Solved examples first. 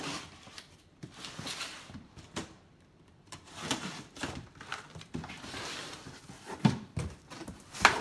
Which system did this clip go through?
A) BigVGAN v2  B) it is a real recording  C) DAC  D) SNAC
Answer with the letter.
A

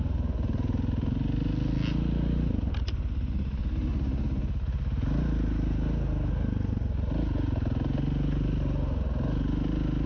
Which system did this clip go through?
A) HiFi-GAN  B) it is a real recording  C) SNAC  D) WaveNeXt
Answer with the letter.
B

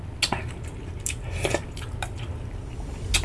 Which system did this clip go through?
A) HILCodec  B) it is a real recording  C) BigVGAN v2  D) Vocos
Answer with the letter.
B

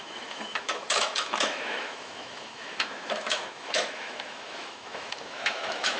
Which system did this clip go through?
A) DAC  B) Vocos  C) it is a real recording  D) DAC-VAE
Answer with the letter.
D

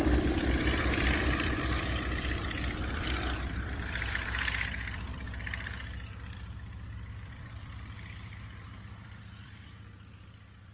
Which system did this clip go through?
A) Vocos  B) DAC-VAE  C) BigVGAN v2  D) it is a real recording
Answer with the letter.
C